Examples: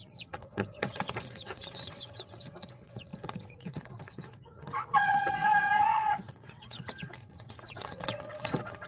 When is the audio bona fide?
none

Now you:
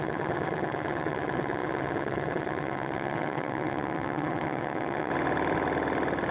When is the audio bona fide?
5.1-6.3

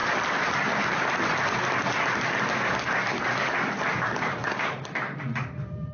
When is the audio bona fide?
0.0-5.9

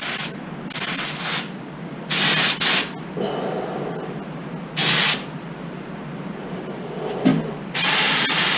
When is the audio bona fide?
0.0-8.6